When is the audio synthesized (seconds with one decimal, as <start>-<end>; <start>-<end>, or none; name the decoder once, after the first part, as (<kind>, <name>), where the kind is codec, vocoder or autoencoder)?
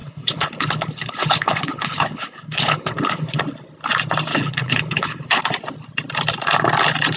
0.0-3.4 (codec, HILCodec); 4.3-5.4